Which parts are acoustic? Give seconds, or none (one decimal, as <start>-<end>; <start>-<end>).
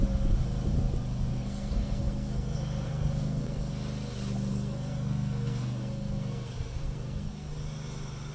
0.0-1.3; 3.7-4.5; 7.5-8.3